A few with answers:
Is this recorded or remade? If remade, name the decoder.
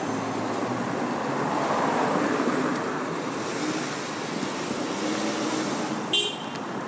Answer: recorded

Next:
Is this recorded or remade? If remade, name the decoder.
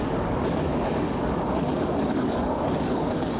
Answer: remade, codec, DAC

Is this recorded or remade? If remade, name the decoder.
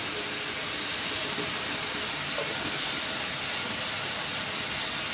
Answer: recorded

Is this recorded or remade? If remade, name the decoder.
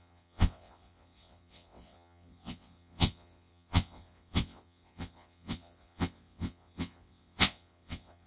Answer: remade, vocoder, WaveNeXt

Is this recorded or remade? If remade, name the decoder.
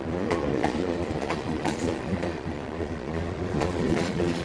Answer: remade, vocoder, Vocos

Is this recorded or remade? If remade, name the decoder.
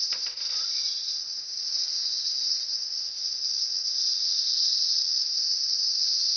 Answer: recorded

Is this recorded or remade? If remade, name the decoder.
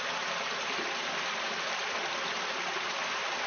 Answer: recorded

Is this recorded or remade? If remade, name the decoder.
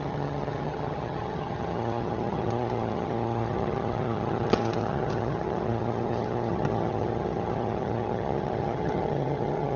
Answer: remade, vocoder, HiFi-GAN